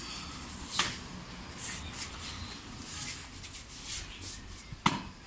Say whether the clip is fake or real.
real